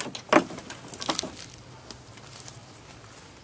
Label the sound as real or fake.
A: real